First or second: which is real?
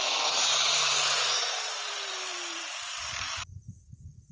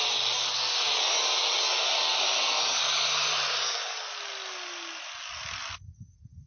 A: second